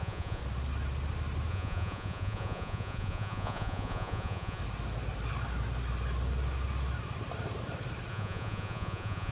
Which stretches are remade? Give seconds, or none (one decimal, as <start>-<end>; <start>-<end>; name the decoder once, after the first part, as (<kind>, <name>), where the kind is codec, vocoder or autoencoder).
0.0-0.4 (vocoder, Vocos); 1.5-4.6; 8.1-9.3